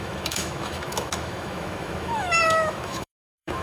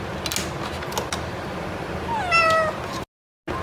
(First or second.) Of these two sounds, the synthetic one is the first